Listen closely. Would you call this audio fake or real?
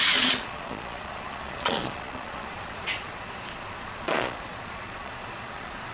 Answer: fake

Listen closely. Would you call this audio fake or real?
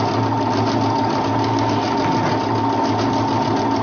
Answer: real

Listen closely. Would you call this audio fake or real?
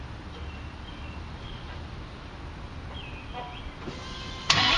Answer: real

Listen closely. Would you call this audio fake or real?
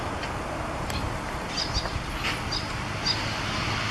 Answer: real